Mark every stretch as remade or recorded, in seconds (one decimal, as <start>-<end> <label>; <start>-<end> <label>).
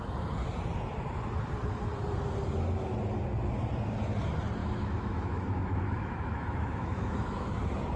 0.0-4.6 recorded; 4.6-7.5 remade; 7.5-8.0 recorded